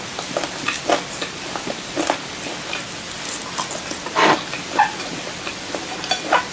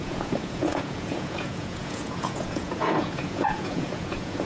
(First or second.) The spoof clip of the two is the second